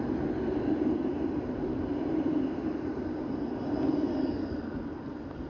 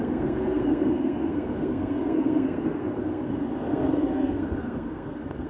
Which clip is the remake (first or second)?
second